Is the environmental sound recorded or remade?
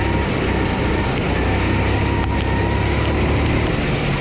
recorded